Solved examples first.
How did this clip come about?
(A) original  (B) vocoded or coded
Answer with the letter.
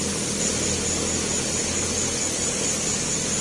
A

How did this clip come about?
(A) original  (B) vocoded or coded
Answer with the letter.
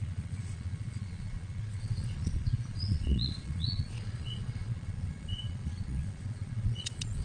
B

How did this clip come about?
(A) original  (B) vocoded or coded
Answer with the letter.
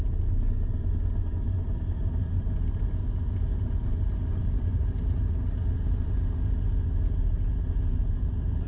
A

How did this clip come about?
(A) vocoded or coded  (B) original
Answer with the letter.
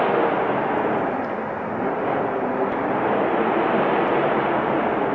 B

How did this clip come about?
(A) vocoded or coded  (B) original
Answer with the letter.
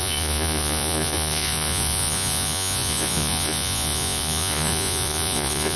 A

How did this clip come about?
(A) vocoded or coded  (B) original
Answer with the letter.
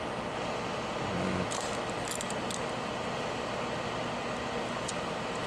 B